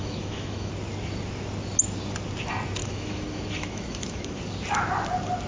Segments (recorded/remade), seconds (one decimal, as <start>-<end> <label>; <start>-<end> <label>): 0.0-0.7 remade; 0.7-2.8 recorded; 2.8-4.4 remade; 4.4-5.5 recorded